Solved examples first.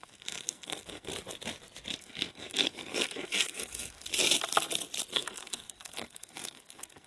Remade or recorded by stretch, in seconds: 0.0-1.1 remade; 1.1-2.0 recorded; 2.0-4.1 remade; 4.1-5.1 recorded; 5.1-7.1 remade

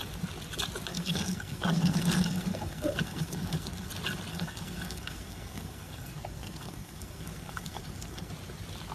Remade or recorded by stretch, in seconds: 0.0-0.9 recorded; 0.9-3.9 remade; 3.9-4.3 recorded; 4.3-8.3 remade; 8.3-8.9 recorded

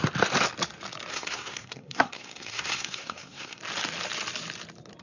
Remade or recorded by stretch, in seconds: 0.0-1.1 recorded; 1.1-3.6 remade; 3.6-5.0 recorded

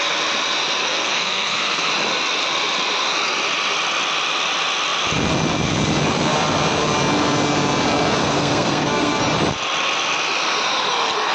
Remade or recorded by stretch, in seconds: 0.0-0.8 recorded; 0.8-1.9 remade; 1.9-8.2 recorded; 8.2-9.2 remade; 9.2-11.3 recorded